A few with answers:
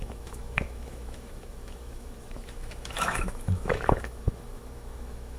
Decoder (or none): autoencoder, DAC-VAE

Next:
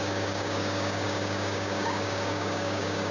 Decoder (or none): codec, DAC